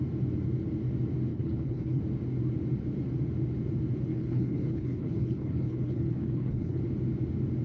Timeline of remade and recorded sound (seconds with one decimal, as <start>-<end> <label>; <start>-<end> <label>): 0.0-1.3 recorded; 1.3-2.0 remade; 2.0-4.1 recorded; 4.1-6.8 remade; 6.8-7.6 recorded